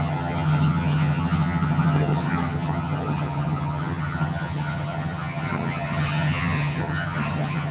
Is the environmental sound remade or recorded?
remade